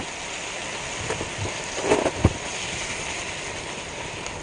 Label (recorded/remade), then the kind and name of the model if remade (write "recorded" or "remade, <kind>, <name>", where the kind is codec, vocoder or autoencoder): recorded